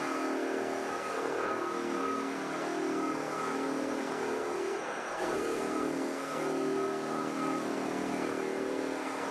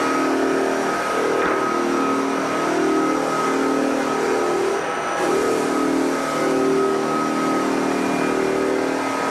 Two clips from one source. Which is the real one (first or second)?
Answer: second